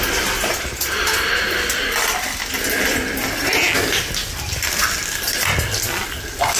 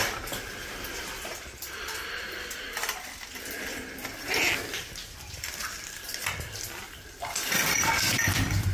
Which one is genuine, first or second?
first